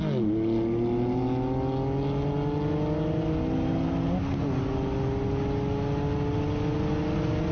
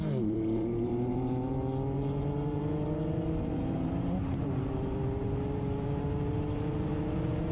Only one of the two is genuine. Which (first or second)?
first